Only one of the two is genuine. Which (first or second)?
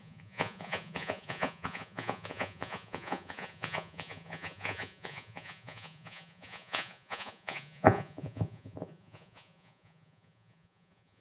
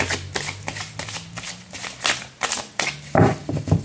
second